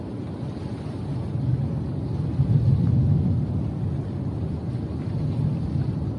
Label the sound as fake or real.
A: real